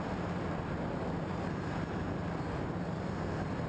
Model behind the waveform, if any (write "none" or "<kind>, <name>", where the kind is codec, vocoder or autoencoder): none